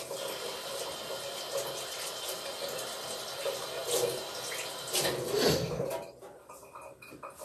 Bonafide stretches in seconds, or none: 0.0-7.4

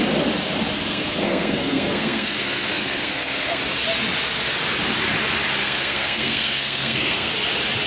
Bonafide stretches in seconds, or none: 0.0-0.9; 3.6-5.6; 7.3-7.9

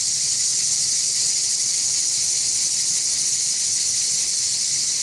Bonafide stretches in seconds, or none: 0.0-5.0

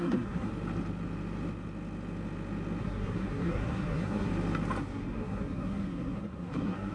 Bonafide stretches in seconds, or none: 0.5-2.8; 4.3-4.8

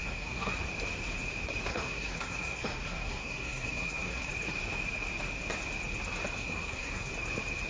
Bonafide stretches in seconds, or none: 0.6-1.7; 4.3-6.4; 7.1-7.7

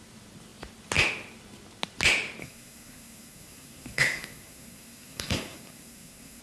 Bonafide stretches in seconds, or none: 0.0-2.4

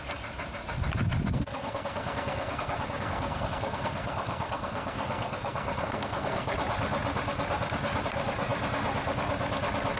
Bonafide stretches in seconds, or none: 0.0-1.3; 6.5-10.0

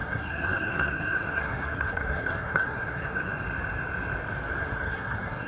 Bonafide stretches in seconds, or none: 3.3-4.6